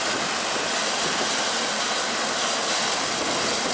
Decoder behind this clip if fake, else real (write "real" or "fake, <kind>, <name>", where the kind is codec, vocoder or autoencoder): real